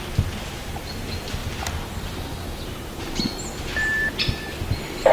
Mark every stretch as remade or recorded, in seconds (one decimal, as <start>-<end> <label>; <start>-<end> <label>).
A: 0.0-5.1 recorded